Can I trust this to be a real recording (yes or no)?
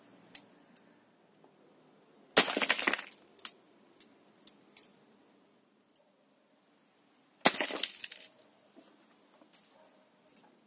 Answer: yes